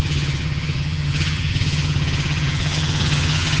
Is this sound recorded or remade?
remade